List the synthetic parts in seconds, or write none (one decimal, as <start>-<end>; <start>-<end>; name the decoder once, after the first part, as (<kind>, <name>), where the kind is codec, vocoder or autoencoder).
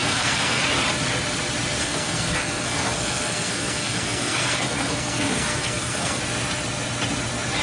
0.0-0.6 (codec, SNAC); 1.8-6.2